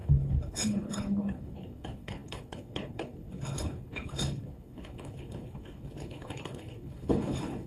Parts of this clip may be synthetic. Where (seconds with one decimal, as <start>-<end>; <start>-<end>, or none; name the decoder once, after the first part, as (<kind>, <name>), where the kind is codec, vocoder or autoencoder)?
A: 0.0-7.7 (codec, HILCodec)

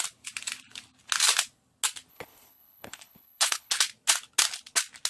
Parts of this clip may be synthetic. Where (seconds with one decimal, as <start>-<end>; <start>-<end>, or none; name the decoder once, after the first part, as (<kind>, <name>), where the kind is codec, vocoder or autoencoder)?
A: 2.1-3.7 (codec, HILCodec)